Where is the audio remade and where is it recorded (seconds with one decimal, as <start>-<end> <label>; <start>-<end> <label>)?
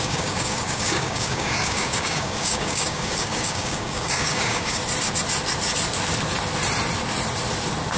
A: 0.0-4.8 remade; 4.8-8.0 recorded